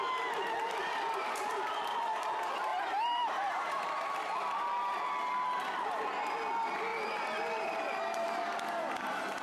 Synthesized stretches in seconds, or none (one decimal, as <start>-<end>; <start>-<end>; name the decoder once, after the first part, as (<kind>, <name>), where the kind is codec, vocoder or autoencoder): 2.7-3.9 (vocoder, BigVGAN v2)